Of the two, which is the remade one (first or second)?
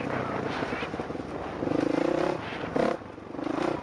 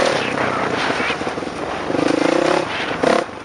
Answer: second